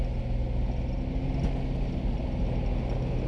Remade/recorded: recorded